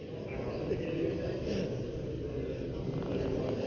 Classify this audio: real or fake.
real